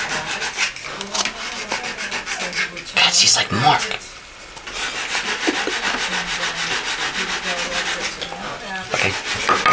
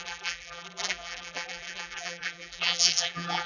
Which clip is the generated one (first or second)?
second